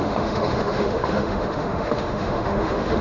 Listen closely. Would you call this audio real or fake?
fake